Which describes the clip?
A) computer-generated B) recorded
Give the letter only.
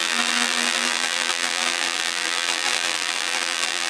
A